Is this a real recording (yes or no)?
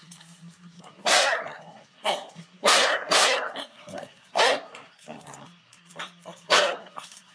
no